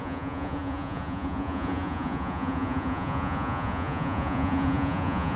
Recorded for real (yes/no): no